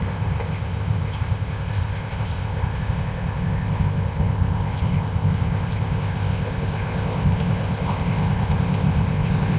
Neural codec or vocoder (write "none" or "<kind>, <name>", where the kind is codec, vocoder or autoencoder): codec, ZipCodec